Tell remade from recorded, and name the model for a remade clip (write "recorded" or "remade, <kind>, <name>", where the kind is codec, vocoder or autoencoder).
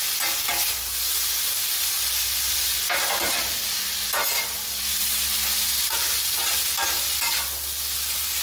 recorded